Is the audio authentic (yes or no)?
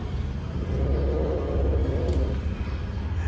yes